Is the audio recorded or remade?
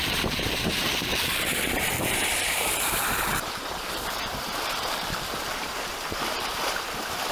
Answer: remade